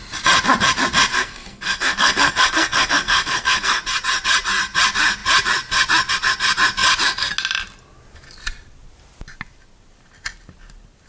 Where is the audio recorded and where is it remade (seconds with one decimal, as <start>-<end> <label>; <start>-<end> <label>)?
0.0-1.1 recorded; 1.1-3.8 remade; 3.8-11.1 recorded